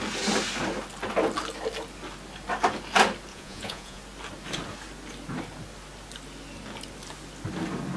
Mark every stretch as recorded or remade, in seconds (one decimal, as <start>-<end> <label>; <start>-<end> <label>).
0.0-3.3 recorded; 3.3-4.0 remade; 4.0-8.0 recorded